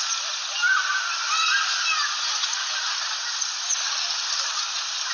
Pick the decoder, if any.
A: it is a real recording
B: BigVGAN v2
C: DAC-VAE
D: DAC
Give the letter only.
A